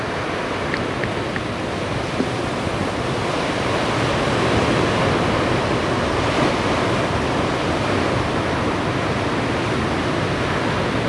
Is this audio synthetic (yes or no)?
no